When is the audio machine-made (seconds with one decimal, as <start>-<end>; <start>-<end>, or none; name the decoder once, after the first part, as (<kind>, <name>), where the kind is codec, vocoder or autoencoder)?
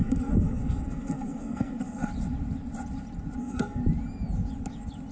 0.0-2.1 (codec, SNAC); 3.4-3.8